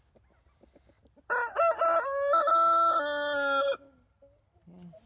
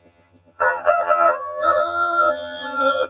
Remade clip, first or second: second